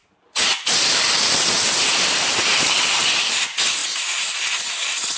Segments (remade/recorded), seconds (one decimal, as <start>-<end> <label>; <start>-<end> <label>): 0.0-3.1 remade; 3.1-3.8 recorded; 3.8-4.7 remade; 4.7-5.2 recorded